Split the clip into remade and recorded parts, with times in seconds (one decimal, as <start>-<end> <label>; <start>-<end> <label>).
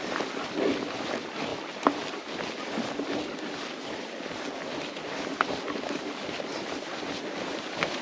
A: 0.0-8.0 recorded